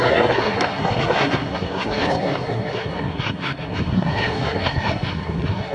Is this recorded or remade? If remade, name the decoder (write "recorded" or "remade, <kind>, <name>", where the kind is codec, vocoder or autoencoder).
remade, codec, SNAC